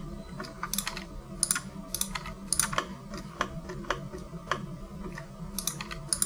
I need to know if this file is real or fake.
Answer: real